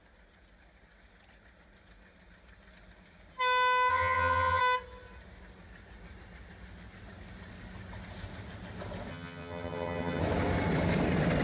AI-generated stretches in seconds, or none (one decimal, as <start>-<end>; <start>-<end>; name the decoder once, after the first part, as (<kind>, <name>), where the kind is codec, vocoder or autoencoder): 3.9-4.6 (vocoder, HiFi-GAN); 9.1-10.2